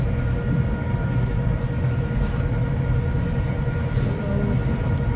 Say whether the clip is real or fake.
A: real